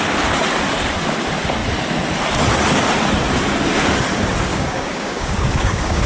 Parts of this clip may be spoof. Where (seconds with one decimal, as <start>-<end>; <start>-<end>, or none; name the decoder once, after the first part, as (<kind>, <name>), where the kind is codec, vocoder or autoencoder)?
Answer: 4.5-6.1 (codec, DAC)